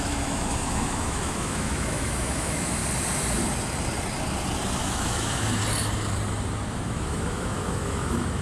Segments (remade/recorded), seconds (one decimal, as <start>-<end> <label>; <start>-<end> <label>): 0.0-2.8 remade; 2.8-4.8 recorded; 4.8-5.6 remade; 5.6-6.7 recorded; 6.7-8.4 remade

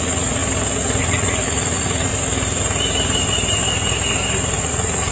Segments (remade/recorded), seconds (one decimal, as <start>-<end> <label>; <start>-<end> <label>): 0.0-0.4 remade; 0.4-1.0 recorded; 1.0-2.1 remade; 2.1-4.6 recorded; 4.6-5.1 remade

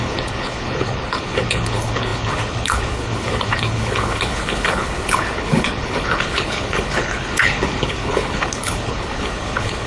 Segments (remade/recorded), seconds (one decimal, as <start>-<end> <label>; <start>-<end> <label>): 0.0-9.9 remade

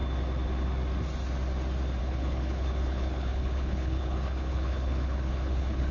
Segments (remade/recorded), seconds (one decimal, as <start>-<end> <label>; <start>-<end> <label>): 0.0-2.0 recorded; 2.0-5.9 remade

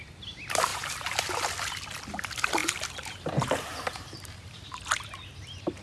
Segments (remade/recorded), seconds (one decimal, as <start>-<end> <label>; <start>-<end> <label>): 0.0-0.7 recorded; 0.7-1.4 remade; 1.4-2.6 recorded; 2.6-4.8 remade; 4.8-5.8 recorded

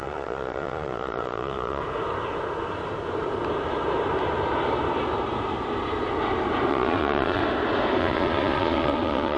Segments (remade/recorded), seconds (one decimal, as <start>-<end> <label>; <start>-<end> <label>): 0.0-1.8 remade; 1.8-6.7 recorded; 6.7-7.4 remade; 7.4-8.0 recorded; 8.0-9.4 remade

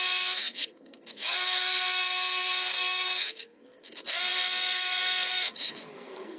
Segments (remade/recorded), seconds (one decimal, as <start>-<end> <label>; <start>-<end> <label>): 0.0-6.4 remade